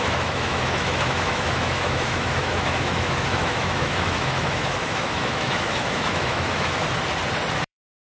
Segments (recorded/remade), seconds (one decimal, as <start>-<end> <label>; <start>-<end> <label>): 0.0-6.8 remade; 6.8-7.5 recorded; 7.5-8.1 remade